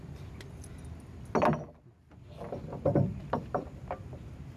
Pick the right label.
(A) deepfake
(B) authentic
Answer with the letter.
B